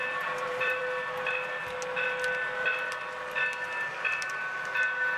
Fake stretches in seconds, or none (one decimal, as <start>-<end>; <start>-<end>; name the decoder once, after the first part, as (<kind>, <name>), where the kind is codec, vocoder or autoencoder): 0.0-0.8 (vocoder, BigVGAN v2)